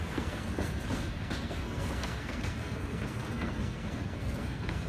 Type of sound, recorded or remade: remade